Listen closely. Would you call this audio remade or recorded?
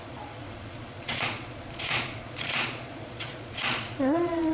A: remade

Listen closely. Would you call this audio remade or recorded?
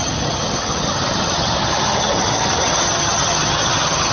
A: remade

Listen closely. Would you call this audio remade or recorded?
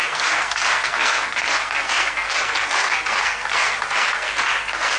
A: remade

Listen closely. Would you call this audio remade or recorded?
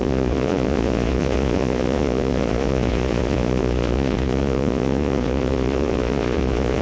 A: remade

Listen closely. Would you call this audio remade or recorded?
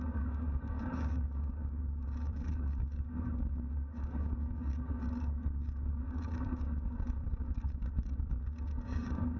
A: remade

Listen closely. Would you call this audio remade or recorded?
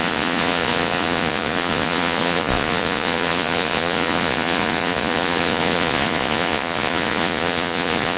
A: remade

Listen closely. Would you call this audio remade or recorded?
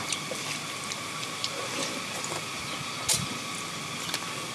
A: recorded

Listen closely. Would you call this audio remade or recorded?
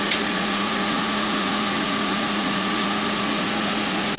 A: remade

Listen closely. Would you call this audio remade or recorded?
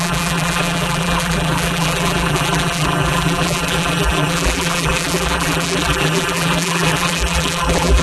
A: remade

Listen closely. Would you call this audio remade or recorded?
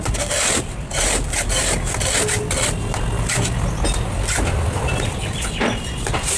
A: recorded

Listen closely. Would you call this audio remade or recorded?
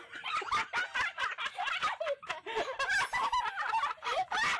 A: recorded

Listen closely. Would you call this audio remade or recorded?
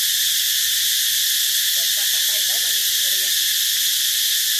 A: recorded